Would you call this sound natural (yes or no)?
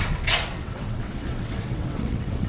no